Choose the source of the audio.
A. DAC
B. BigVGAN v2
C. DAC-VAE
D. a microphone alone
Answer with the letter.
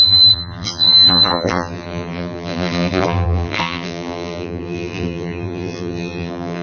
B